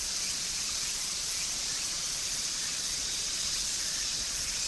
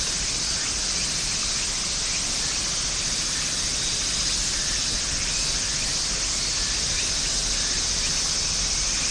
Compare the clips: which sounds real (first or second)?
second